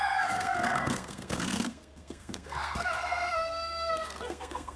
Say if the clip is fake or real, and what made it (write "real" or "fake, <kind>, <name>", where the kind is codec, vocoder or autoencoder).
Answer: fake, codec, SNAC